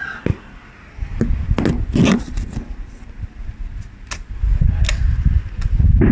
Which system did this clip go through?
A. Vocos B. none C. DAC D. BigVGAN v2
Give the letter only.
B